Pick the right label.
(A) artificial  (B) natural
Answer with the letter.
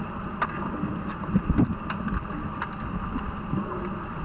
B